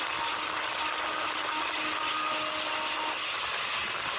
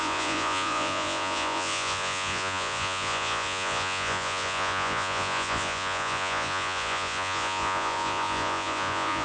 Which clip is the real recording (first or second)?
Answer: first